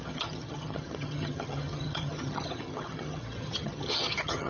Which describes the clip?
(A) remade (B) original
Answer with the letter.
A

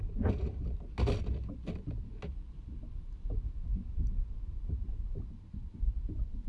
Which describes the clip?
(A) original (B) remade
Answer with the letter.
A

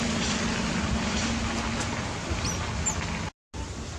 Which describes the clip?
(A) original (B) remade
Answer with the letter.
A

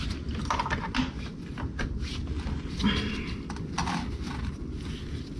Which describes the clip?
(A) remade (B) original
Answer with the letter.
B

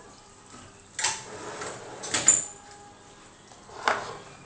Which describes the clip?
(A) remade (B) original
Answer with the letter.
B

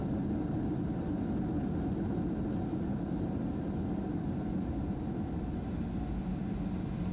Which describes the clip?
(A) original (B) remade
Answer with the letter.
A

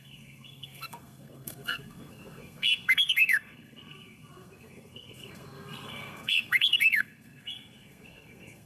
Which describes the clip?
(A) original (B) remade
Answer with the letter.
B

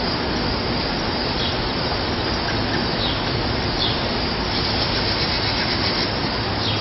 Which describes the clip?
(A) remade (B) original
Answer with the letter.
B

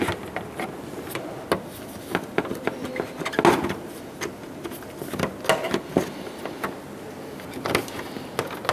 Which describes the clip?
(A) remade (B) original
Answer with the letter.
B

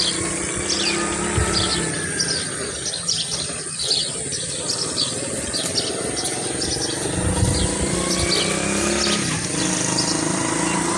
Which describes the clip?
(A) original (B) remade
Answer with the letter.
A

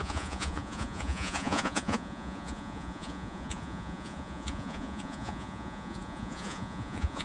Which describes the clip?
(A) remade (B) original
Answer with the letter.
A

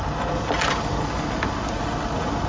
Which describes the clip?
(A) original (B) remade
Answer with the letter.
A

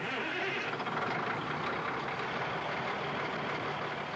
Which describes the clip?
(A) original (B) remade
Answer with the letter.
A